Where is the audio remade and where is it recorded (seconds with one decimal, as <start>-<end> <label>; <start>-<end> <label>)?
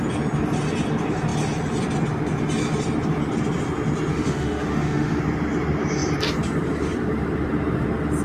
0.0-4.1 recorded; 4.1-5.2 remade; 5.2-8.2 recorded